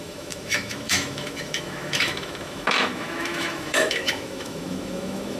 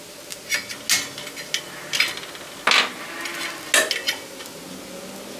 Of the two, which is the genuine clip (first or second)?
second